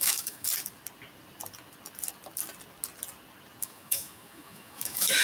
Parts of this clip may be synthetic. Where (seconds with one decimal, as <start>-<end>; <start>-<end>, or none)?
0.0-0.5; 3.6-5.2